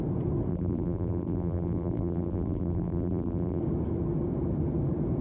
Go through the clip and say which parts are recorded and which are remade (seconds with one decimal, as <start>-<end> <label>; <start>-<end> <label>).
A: 0.0-0.5 recorded; 0.5-3.6 remade; 3.6-5.2 recorded